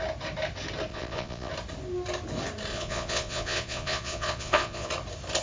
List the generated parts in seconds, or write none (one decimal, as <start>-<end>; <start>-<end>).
0.9-1.5; 2.7-4.9